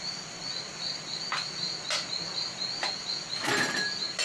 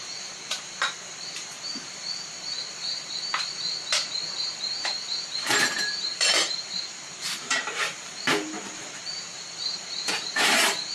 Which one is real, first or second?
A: first